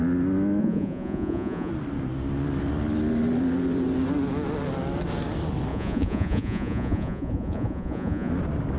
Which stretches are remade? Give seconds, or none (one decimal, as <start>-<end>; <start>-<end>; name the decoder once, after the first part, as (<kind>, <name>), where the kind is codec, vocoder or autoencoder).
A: 0.6-1.7 (vocoder, Vocos); 5.7-8.3